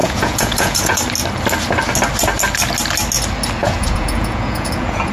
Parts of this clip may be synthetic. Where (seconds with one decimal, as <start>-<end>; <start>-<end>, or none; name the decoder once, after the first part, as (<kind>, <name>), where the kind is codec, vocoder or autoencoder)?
0.0-1.0 (vocoder, Vocos); 3.6-5.1